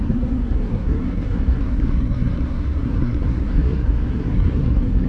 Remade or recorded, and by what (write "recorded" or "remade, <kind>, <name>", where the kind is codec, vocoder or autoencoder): remade, codec, SNAC